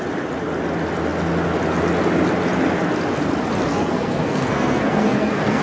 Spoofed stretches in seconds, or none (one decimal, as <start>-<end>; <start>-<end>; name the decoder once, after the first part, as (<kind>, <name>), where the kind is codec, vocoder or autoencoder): 3.7-5.6 (codec, SNAC)